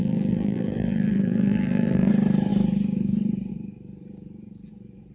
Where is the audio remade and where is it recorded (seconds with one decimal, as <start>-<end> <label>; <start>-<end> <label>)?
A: 0.0-2.1 remade; 2.1-5.1 recorded